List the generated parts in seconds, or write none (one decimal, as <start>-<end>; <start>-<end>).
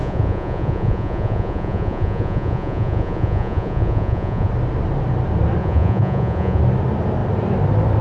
0.0-4.5; 5.6-6.6